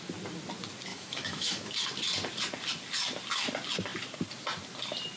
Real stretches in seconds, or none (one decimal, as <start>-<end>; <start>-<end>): 0.0-0.9; 1.7-5.2